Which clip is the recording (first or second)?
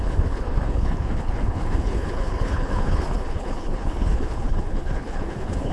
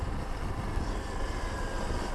second